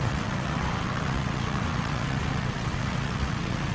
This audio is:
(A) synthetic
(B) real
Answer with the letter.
A